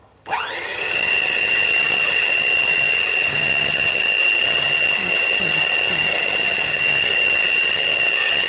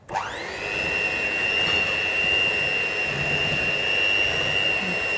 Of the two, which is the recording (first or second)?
second